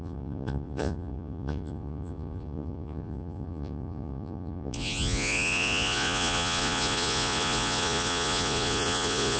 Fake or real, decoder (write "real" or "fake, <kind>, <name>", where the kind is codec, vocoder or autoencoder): fake, vocoder, Vocos